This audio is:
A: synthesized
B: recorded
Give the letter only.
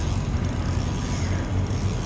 B